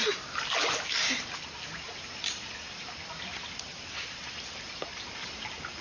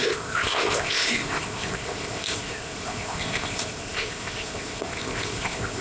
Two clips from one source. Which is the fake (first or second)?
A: second